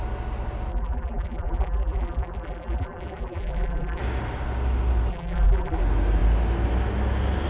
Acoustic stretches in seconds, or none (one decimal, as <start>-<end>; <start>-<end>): 0.0-0.7; 4.0-5.1; 5.8-7.5